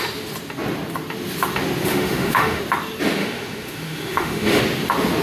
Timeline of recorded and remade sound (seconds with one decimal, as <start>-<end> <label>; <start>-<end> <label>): 0.0-1.9 recorded; 1.9-2.6 remade; 2.6-3.2 recorded; 3.2-4.6 remade; 4.6-5.2 recorded

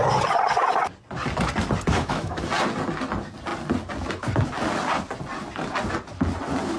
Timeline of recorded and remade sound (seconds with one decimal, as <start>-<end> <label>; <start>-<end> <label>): 0.0-1.9 recorded; 1.9-2.4 remade; 2.4-6.8 recorded

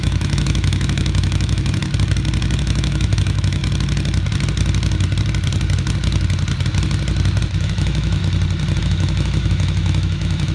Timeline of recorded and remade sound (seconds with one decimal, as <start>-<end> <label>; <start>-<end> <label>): 0.0-1.8 remade; 1.8-2.6 recorded; 2.6-3.6 remade; 3.6-7.6 recorded; 7.6-8.2 remade; 8.2-8.8 recorded; 8.8-10.5 remade